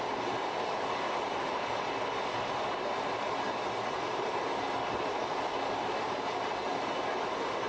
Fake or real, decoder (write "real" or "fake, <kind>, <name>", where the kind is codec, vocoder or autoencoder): real